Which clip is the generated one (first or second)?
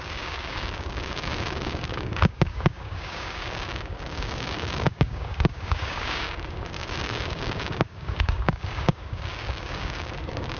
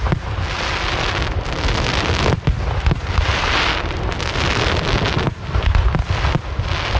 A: first